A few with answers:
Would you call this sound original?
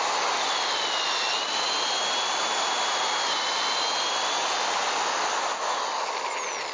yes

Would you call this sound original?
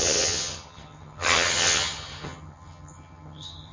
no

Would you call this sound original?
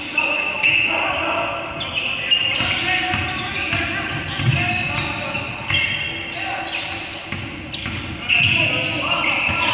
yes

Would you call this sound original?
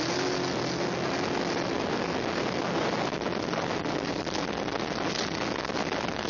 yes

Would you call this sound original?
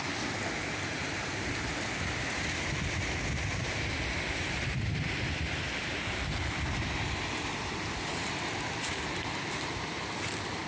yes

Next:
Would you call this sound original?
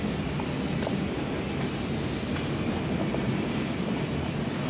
yes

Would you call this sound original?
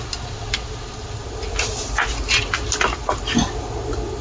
yes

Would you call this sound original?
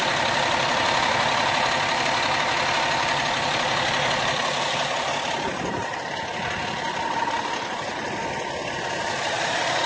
yes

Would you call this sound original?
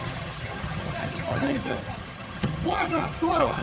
no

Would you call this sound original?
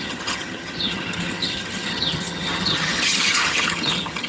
no